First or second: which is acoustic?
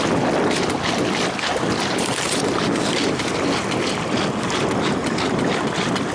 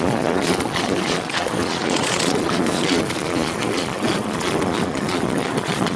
first